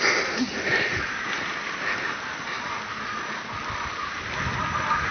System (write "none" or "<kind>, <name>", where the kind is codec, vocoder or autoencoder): none